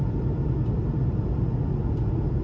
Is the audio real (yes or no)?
yes